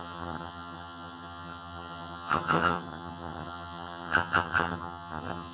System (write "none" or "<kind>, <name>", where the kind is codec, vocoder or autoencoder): vocoder, HiFi-GAN